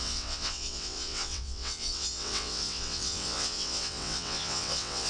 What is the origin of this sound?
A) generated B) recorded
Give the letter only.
A